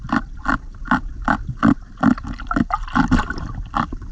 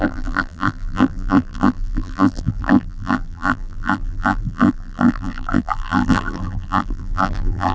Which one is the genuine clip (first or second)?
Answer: first